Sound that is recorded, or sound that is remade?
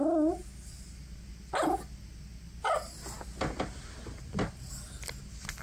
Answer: recorded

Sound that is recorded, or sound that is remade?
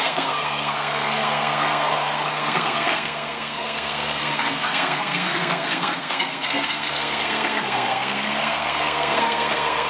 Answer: remade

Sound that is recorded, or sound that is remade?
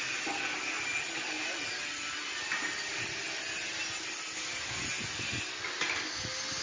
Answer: recorded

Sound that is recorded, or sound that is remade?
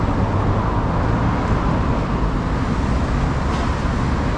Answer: recorded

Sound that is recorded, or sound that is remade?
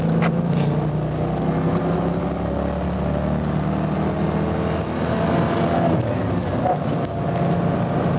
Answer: recorded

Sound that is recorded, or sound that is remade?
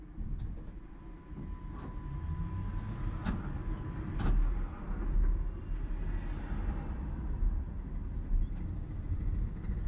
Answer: recorded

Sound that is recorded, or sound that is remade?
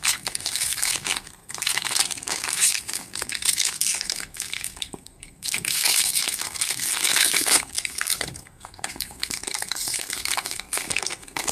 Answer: remade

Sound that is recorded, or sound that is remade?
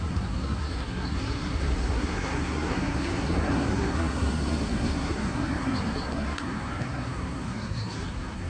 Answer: remade